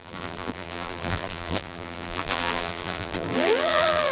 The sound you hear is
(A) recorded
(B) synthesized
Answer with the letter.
B